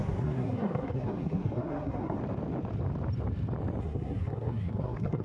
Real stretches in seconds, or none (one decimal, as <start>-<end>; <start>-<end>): 2.2-3.8